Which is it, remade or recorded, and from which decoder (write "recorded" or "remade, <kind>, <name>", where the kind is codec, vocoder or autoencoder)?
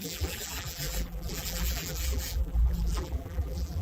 remade, vocoder, BigVGAN v2